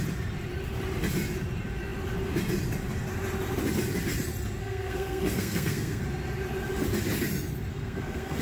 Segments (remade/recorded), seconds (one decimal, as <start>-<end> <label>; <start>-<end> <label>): 0.0-4.6 recorded; 4.6-6.0 remade; 6.0-7.7 recorded; 7.7-8.4 remade